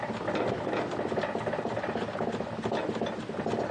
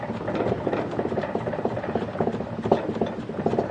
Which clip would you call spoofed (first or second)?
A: second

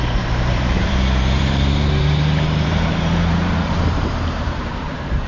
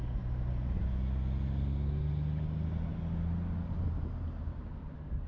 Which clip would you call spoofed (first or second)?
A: first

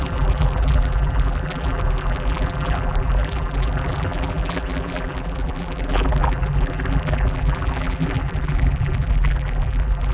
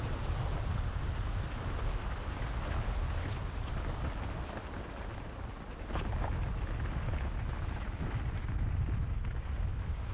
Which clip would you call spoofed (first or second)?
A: first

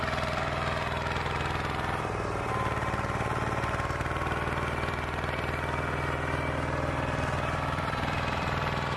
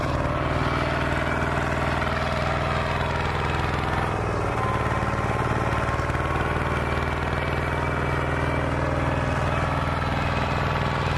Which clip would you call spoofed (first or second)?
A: first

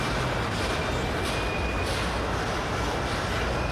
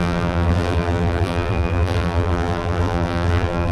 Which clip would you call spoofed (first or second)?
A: second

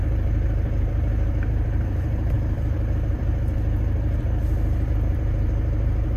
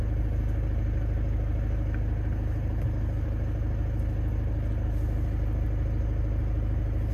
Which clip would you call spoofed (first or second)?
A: first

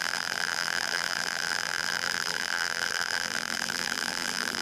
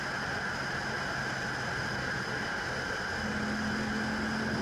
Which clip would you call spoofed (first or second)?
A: first